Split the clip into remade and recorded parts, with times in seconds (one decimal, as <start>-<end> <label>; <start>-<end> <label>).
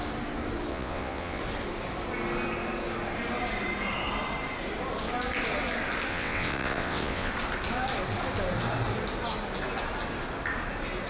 0.0-0.7 recorded; 0.7-1.4 remade; 1.4-6.1 recorded; 6.1-7.3 remade; 7.3-11.1 recorded